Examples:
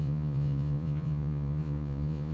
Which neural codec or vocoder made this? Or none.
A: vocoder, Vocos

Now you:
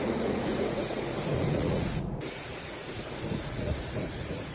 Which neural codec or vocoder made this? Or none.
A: vocoder, Vocos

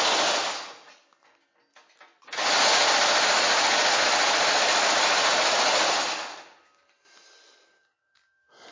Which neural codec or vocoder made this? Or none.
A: none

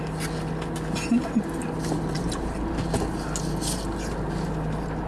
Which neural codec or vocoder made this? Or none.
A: none